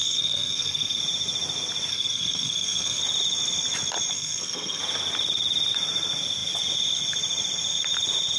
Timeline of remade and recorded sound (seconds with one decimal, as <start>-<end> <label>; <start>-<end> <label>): 0.0-1.0 remade; 1.0-1.9 recorded; 1.9-3.0 remade; 3.0-4.1 recorded; 4.1-4.8 remade; 4.8-8.4 recorded